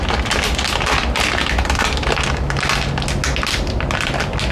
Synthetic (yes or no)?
no